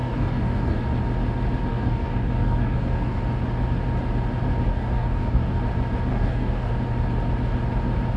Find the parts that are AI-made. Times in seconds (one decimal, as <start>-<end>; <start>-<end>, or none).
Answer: 0.0-0.8; 1.7-3.2; 4.7-5.6; 6.1-6.7

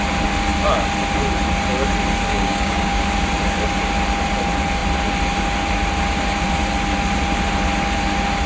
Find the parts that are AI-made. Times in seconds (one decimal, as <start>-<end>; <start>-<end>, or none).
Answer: 2.3-3.0

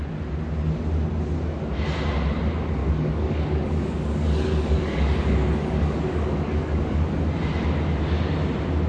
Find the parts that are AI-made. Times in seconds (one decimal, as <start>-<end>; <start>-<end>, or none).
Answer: 2.8-7.1

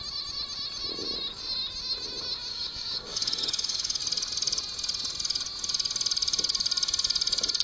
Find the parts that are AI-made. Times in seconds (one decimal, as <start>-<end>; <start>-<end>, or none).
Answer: 2.5-4.0